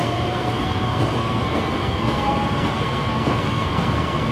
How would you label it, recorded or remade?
remade